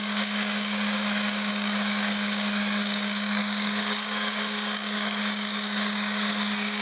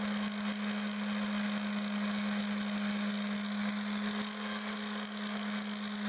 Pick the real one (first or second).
second